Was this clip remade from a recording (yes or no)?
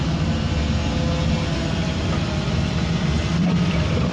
no